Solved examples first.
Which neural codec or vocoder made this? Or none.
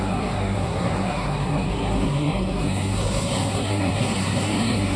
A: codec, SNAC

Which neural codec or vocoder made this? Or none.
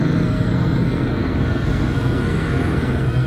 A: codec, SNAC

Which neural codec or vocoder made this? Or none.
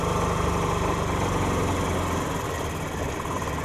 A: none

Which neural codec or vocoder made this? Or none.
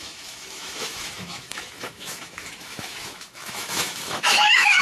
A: autoencoder, DAC-VAE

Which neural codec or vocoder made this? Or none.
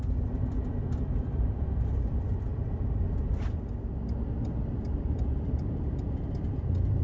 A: vocoder, BigVGAN v2